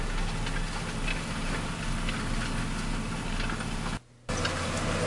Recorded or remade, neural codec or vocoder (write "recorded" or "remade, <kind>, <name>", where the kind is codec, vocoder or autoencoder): recorded